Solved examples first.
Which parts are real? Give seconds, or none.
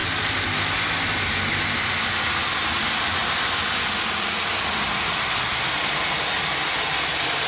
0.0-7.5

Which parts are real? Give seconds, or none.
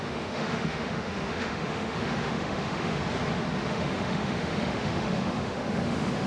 3.0-3.7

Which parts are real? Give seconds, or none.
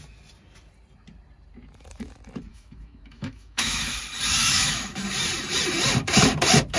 0.0-2.5; 4.0-4.4; 5.0-6.8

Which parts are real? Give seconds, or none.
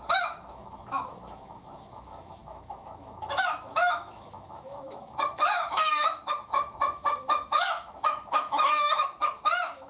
none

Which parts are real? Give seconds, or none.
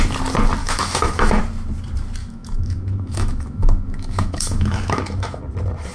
0.0-0.6; 1.4-2.2; 5.4-5.9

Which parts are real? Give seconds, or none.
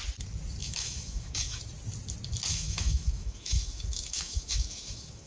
0.0-0.6; 1.6-2.5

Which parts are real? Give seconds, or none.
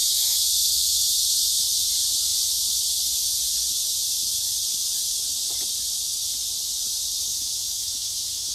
1.2-7.3